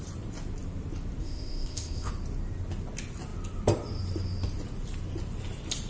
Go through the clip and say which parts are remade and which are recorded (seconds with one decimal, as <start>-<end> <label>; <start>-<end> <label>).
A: 0.0-1.2 recorded; 1.2-2.1 remade; 2.1-5.9 recorded